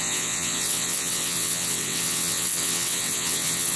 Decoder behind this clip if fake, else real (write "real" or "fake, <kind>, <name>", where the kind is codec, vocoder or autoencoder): fake, vocoder, WaveNeXt